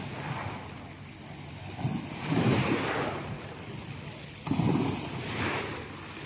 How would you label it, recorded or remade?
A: recorded